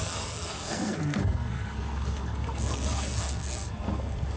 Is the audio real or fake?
fake